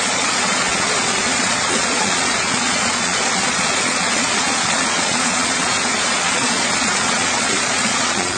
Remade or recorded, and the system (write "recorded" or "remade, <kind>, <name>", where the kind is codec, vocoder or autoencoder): remade, vocoder, Vocos